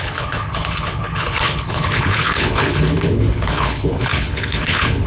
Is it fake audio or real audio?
fake